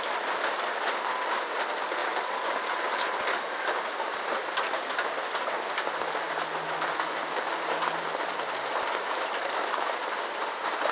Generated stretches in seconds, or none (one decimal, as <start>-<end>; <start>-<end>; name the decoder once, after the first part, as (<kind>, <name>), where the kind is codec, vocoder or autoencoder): none

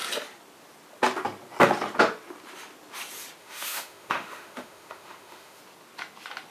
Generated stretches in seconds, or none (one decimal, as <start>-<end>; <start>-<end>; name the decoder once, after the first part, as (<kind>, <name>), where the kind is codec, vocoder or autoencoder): 3.4-5.6 (autoencoder, DAC-VAE)

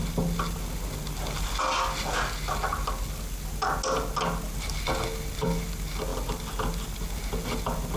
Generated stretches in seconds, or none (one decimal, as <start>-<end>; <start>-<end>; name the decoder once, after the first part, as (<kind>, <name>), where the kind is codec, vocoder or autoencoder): none

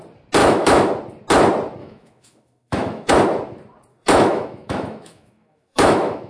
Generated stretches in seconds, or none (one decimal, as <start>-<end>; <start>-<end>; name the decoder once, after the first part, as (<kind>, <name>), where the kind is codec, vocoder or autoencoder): 0.4-0.9 (autoencoder, DAC-VAE); 1.8-3.1; 3.9-6.3

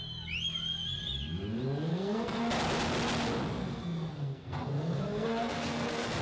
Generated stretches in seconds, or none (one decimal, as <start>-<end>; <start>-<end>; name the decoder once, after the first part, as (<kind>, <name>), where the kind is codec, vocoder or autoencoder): 1.9-2.4 (codec, SNAC); 3.6-6.2

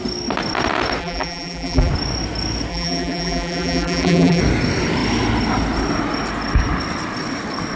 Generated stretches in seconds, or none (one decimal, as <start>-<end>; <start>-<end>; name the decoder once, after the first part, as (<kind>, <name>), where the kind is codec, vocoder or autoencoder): 1.0-1.9 (vocoder, BigVGAN v2); 2.7-4.4

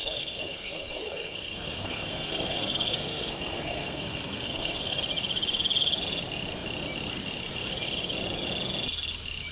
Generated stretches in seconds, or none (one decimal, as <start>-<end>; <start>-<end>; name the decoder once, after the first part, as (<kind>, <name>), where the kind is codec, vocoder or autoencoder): 0.0-5.0 (codec, SNAC)

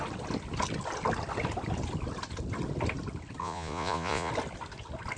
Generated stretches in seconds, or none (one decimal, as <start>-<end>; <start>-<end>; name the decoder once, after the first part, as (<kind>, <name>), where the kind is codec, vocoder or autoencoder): 3.4-4.3 (vocoder, Vocos)